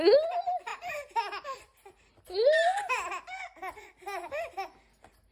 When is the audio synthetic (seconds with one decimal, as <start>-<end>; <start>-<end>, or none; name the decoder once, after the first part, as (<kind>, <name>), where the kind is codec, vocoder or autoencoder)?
0.7-1.2 (vocoder, BigVGAN v2)